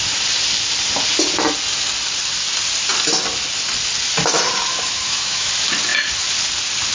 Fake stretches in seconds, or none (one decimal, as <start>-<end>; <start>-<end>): 4.7-5.5